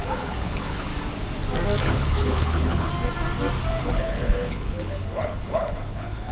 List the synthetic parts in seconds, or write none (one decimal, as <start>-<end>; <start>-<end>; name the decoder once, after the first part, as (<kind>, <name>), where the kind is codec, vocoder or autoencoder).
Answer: 0.0-0.9 (codec, HILCodec); 1.8-2.9; 3.8-6.3

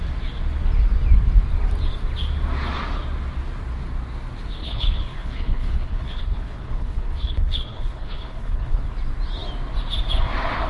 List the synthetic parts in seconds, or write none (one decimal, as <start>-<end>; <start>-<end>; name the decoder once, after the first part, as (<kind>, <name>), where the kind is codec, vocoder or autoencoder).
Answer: 4.6-8.8 (codec, HILCodec)

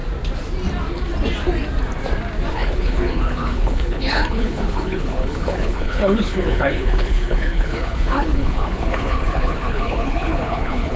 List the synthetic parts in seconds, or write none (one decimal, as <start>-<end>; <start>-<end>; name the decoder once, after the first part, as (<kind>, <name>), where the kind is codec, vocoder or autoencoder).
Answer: 2.5-11.0 (codec, HILCodec)

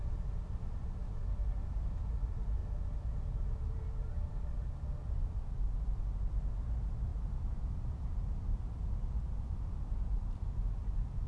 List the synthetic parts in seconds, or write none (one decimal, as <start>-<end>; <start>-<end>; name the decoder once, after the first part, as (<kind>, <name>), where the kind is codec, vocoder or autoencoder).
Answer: none

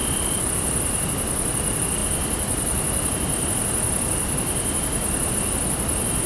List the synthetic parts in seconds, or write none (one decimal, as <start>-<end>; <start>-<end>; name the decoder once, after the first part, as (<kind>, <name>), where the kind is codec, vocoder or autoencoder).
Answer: none

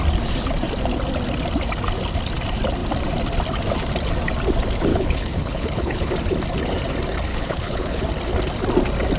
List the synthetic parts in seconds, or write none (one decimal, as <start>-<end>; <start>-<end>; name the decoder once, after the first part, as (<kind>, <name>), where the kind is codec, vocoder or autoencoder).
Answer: 4.9-6.1 (codec, HILCodec); 7.3-8.0

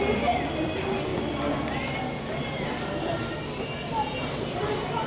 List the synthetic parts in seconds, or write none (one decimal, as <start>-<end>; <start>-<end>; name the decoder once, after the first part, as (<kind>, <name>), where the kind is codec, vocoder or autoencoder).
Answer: none

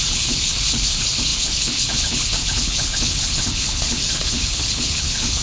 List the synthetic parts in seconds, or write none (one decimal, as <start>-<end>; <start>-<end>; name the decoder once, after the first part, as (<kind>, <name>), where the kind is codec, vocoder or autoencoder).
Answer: 0.0-5.4 (codec, HILCodec)